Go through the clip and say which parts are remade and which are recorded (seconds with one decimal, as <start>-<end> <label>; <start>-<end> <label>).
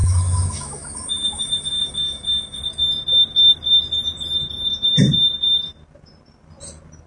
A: 0.0-2.6 remade; 2.6-7.1 recorded